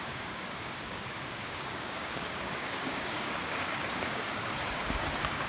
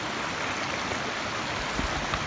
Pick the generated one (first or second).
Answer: first